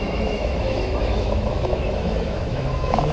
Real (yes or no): no